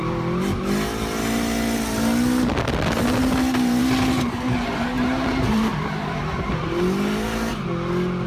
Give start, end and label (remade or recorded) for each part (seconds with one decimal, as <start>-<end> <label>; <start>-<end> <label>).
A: 0.0-8.3 recorded